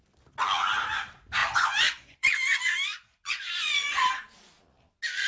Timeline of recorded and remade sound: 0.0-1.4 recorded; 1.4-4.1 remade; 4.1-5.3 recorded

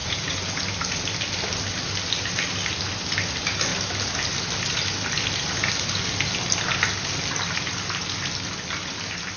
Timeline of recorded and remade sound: 0.0-0.6 remade; 0.6-9.4 recorded

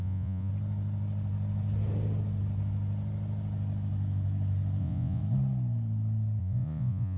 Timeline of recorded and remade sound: 0.0-0.5 remade; 0.5-4.8 recorded; 4.8-5.2 remade; 5.2-6.4 recorded; 6.4-7.2 remade